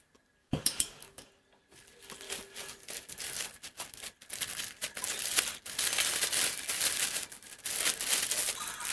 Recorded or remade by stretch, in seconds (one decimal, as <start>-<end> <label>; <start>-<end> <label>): 0.0-0.4 recorded; 0.4-1.3 remade; 1.3-8.9 recorded